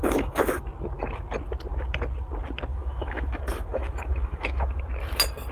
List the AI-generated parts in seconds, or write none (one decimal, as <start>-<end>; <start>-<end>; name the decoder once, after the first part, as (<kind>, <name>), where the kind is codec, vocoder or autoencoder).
0.0-0.6 (autoencoder, DAC-VAE); 2.7-4.8